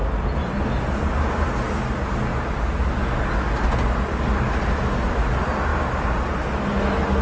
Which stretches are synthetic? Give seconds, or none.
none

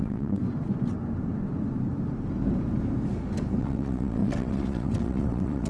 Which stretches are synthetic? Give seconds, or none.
0.0-0.4 (vocoder, WaveNeXt); 3.6-5.7

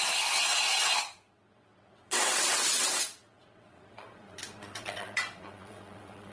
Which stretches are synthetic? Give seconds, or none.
0.0-6.3 (vocoder, WaveNeXt)

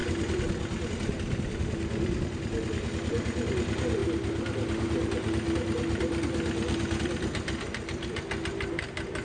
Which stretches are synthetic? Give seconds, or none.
none

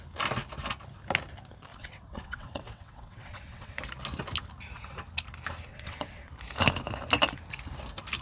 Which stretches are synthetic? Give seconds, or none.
1.7-3.8 (vocoder, WaveNeXt); 5.7-6.3

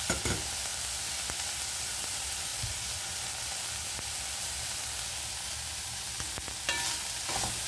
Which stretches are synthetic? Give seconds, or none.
none